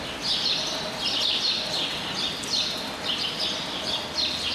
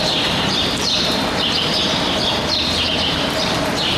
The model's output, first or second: second